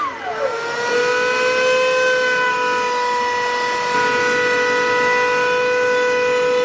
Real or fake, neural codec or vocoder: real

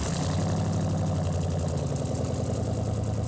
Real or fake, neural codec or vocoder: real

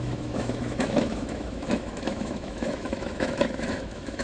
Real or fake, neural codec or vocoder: fake, autoencoder, DAC-VAE